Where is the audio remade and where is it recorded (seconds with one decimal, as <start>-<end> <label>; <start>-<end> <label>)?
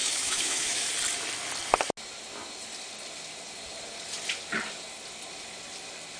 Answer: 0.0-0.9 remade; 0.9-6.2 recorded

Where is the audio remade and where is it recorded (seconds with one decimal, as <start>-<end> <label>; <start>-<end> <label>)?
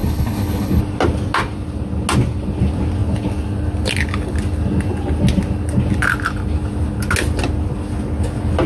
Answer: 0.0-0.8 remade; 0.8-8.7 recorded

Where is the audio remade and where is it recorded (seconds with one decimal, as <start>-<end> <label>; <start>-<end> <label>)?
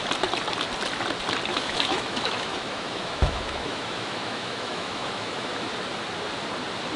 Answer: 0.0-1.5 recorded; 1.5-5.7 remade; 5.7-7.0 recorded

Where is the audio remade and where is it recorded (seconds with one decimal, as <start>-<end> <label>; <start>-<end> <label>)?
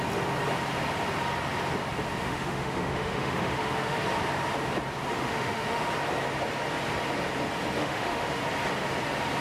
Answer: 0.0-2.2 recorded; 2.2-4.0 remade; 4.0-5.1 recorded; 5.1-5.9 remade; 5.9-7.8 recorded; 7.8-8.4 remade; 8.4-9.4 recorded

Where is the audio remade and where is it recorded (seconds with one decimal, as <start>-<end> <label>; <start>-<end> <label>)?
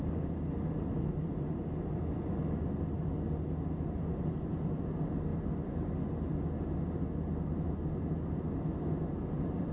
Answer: 0.0-9.7 recorded